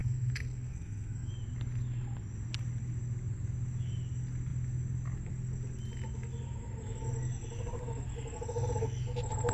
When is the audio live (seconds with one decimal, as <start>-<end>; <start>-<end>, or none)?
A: 1.3-9.5